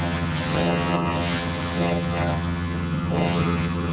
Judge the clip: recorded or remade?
remade